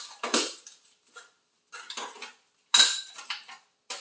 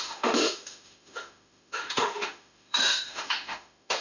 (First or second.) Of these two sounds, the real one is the first